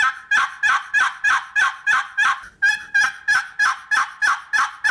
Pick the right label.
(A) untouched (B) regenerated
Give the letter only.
A